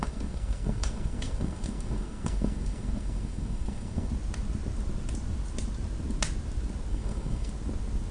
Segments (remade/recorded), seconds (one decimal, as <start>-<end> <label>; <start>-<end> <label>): 0.0-4.1 remade; 4.1-6.9 recorded; 6.9-7.5 remade; 7.5-8.1 recorded